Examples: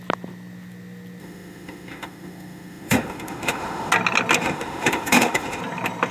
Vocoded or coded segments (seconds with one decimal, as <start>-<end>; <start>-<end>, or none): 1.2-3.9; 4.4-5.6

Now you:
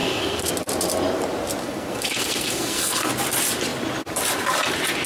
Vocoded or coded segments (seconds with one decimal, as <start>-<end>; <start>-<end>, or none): 0.0-0.5; 1.6-3.1

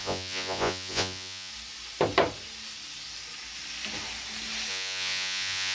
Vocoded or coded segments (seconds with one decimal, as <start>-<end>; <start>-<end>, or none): 0.0-1.5; 4.7-5.7

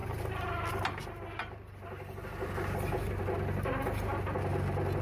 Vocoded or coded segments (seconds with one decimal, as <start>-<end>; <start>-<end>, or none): none

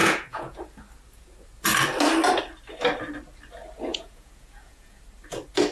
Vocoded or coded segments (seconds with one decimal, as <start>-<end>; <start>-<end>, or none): 0.0-0.6; 3.9-5.0

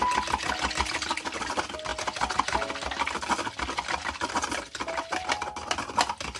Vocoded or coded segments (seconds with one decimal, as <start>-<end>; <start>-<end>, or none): none